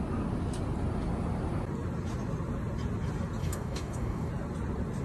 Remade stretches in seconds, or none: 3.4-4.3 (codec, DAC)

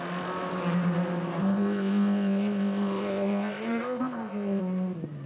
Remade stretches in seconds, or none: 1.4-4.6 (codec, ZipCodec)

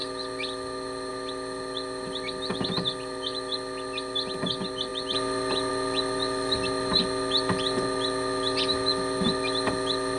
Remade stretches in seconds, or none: none